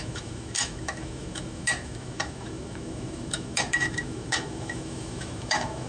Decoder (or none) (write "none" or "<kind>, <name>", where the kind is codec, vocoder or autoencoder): autoencoder, DAC-VAE